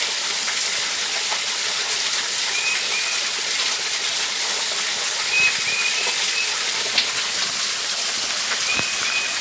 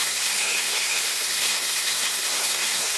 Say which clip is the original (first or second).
first